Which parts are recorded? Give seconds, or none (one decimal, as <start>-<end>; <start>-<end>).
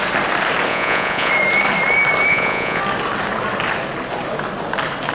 0.0-0.7; 1.3-2.3; 2.8-5.1